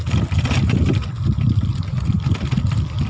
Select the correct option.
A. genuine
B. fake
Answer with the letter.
A